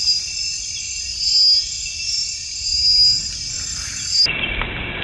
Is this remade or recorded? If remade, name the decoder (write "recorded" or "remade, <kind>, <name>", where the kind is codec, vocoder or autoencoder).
recorded